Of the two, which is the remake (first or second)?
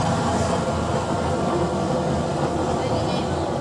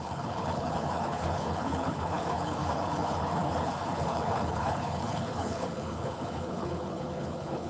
second